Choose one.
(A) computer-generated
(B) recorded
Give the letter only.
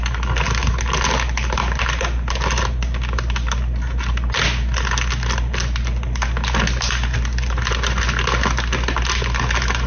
B